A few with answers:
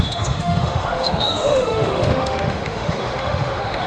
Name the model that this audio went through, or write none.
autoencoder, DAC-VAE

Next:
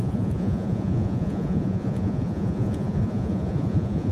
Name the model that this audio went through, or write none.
vocoder, Vocos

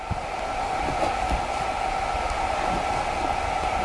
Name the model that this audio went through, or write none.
none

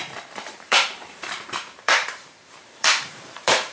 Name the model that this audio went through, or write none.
vocoder, BigVGAN v2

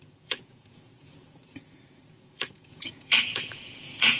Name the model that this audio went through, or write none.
vocoder, Vocos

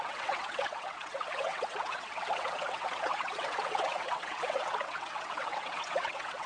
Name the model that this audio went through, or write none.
vocoder, WaveNeXt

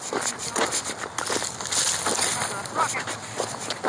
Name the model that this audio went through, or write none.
none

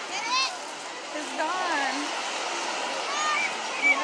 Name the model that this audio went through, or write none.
none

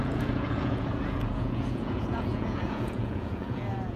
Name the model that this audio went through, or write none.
vocoder, Vocos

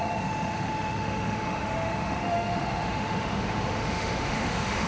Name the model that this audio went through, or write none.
autoencoder, DAC-VAE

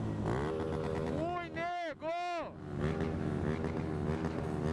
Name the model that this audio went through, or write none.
none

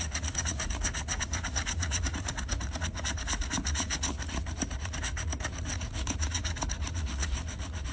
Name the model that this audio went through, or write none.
vocoder, Vocos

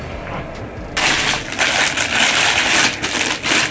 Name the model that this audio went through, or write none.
none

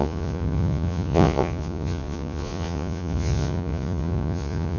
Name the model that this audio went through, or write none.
vocoder, Vocos